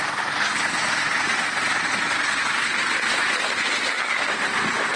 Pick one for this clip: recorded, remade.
recorded